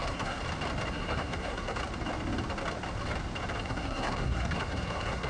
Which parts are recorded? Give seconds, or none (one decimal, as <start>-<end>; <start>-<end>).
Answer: 0.4-0.9; 1.8-3.6